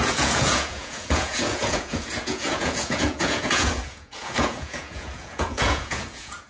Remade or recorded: remade